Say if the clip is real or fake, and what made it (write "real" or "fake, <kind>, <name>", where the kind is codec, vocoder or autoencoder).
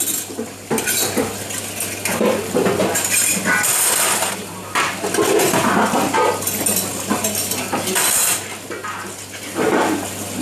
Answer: real